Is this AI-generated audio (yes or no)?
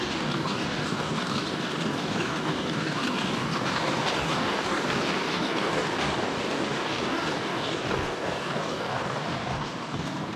yes